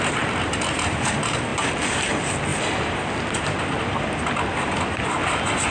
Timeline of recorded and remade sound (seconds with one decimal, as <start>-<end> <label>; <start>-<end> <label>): 0.0-5.7 recorded